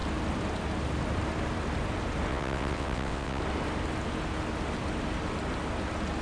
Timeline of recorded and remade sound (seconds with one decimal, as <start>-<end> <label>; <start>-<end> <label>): 0.0-2.3 recorded; 2.3-3.4 remade; 3.4-6.2 recorded